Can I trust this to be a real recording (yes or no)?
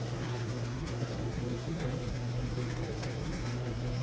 no